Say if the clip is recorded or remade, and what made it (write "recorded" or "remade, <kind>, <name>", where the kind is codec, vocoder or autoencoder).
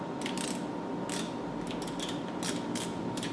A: recorded